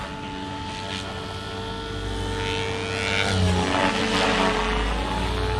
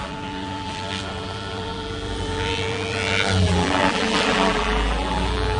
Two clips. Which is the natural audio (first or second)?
first